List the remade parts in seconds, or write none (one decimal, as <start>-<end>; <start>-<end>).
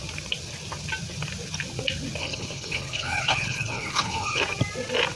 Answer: 2.2-4.4